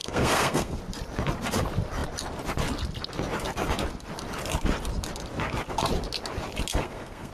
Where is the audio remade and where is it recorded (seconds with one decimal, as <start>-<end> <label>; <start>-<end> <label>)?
0.0-0.8 remade; 0.8-6.7 recorded; 6.7-7.3 remade